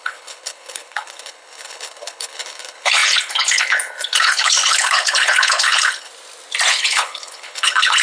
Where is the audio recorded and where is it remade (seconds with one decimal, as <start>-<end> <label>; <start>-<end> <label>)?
0.0-6.1 remade; 6.1-6.7 recorded; 6.7-8.0 remade